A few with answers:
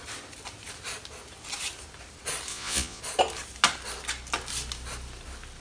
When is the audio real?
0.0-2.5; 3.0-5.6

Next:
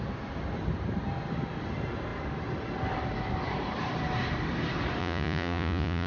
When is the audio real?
0.0-5.0

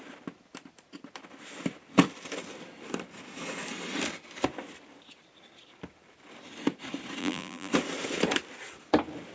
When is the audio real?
0.0-7.2; 7.7-9.3

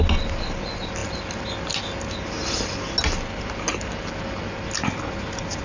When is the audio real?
0.0-5.6